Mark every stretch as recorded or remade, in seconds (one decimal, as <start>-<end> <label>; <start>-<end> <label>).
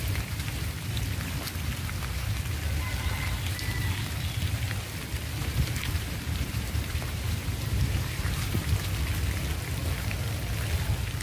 0.0-5.4 recorded; 5.4-8.9 remade; 8.9-11.2 recorded